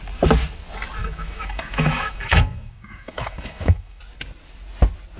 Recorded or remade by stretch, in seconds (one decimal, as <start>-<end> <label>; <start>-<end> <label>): 0.0-1.0 recorded; 1.0-4.0 remade; 4.0-5.2 recorded